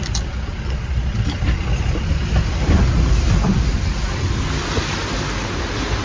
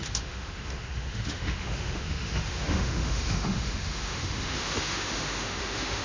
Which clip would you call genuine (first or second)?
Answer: first